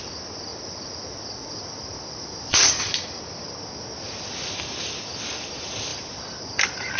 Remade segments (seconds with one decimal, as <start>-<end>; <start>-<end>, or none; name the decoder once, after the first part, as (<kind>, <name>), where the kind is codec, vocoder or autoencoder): 0.5-2.9 (vocoder, BigVGAN v2); 5.9-7.0